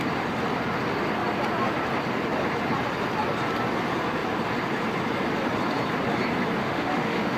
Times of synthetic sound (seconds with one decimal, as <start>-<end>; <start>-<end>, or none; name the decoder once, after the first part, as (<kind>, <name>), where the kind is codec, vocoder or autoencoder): 6.6-7.4 (autoencoder, DAC-VAE)